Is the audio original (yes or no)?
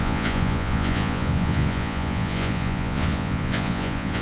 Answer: no